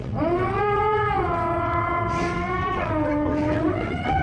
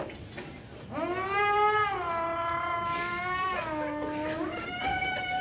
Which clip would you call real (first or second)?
second